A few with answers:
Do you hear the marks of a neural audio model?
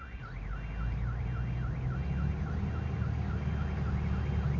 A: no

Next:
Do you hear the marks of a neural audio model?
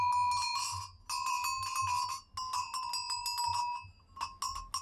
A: no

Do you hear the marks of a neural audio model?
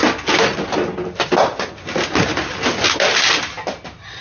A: no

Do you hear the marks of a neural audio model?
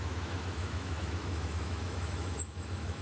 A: yes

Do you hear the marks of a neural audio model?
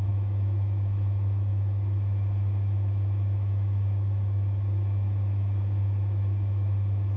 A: yes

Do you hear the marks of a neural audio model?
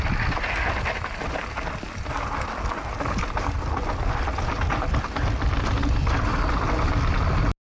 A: no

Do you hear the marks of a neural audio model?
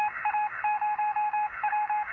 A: yes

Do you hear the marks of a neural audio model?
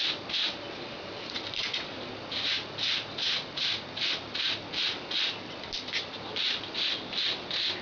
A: no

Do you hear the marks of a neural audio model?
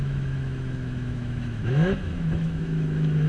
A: yes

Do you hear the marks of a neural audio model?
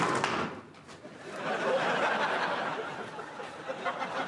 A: no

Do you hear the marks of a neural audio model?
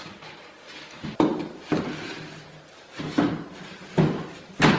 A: no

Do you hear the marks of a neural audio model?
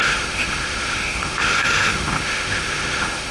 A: yes